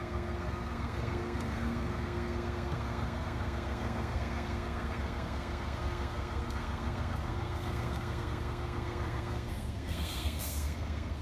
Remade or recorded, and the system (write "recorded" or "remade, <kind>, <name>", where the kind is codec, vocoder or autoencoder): remade, codec, SNAC